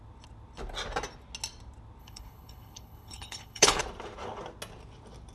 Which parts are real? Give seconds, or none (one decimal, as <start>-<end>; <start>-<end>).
0.0-2.0; 3.8-5.3